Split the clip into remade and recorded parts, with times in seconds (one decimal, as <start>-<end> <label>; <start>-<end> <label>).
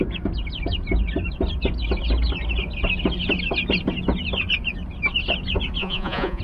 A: 0.0-5.8 recorded; 5.8-6.4 remade